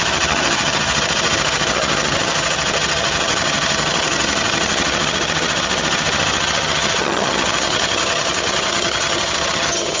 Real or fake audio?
fake